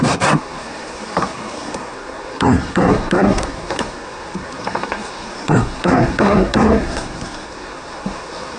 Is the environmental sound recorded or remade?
remade